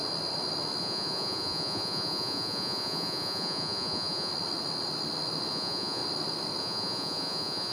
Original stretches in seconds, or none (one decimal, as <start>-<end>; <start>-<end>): 0.0-0.8; 4.3-5.5; 6.0-6.6